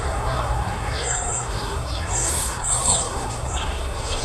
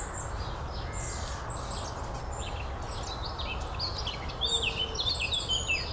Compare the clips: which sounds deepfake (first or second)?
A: first